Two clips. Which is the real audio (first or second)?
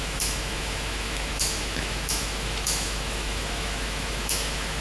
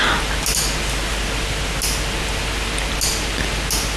second